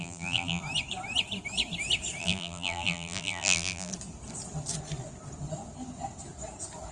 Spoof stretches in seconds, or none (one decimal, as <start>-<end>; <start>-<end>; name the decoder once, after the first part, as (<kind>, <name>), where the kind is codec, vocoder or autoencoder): 0.0-0.6 (vocoder, BigVGAN v2); 2.2-3.9